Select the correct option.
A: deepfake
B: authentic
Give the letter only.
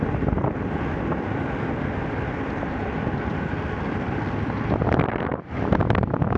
B